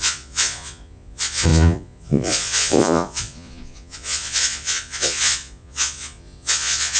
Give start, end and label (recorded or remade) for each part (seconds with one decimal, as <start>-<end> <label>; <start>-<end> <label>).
0.0-7.0 remade